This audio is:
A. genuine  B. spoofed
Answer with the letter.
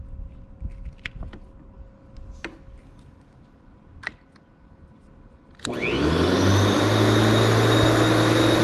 A